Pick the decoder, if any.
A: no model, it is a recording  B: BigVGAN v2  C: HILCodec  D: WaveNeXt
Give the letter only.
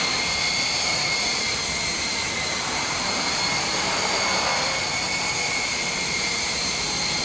B